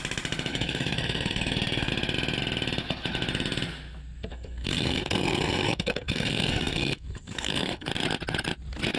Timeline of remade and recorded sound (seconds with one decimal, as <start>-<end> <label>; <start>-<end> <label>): 0.0-0.5 recorded; 0.5-1.9 remade; 1.9-4.3 recorded; 4.3-7.9 remade; 7.9-9.0 recorded

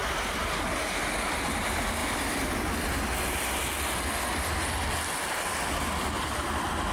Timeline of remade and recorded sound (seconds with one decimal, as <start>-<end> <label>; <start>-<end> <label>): 0.0-6.9 recorded

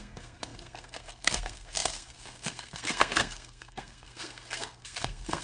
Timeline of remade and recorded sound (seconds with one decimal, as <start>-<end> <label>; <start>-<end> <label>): 0.0-5.4 remade

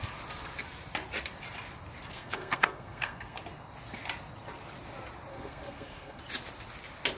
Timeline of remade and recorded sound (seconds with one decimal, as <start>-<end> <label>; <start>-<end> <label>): 0.0-2.1 recorded; 2.1-3.4 remade; 3.4-5.3 recorded; 5.3-6.2 remade; 6.2-7.2 recorded

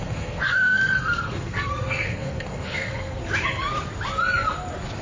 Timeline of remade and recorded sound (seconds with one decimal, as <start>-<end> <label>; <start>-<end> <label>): 0.0-3.2 remade; 3.2-5.0 recorded

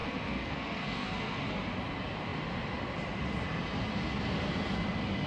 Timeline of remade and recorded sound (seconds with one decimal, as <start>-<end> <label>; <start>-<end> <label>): 0.0-1.4 remade; 1.4-5.3 recorded

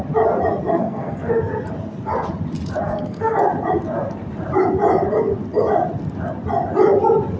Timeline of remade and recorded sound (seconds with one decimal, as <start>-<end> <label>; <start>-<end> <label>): 0.0-0.7 recorded; 0.7-1.3 remade; 1.3-2.9 recorded; 2.9-3.4 remade; 3.4-7.4 recorded